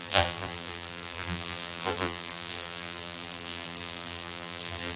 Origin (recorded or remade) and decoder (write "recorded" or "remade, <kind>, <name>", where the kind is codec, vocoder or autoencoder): remade, vocoder, BigVGAN v2